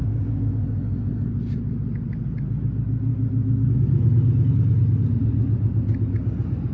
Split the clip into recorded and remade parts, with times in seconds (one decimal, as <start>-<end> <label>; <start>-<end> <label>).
0.0-0.5 remade; 0.5-6.7 recorded